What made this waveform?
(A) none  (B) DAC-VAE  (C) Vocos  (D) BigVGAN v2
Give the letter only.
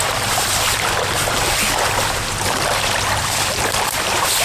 A